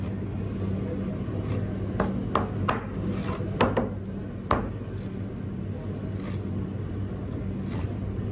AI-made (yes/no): no